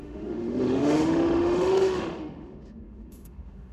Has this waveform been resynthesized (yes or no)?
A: yes